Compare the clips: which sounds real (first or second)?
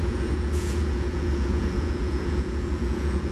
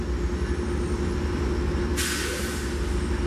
second